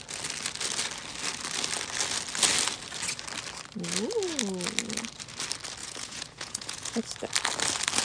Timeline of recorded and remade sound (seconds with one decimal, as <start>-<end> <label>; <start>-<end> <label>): 0.0-5.8 recorded; 5.8-7.0 remade; 7.0-8.0 recorded